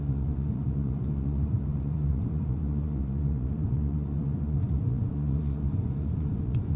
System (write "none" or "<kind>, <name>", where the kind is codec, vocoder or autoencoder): vocoder, Vocos